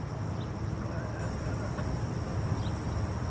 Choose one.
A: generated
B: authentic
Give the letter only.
B